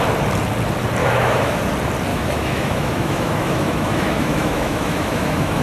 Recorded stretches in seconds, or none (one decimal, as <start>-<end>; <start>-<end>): 0.0-1.0; 1.6-2.1